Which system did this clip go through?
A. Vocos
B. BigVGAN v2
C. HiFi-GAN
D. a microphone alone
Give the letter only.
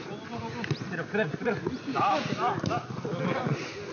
D